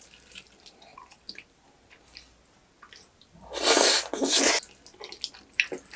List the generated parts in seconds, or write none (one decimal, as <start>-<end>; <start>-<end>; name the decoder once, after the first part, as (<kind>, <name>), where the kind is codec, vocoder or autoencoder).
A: none